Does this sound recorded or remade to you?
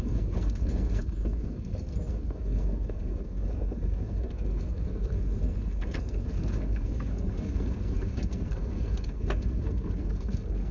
remade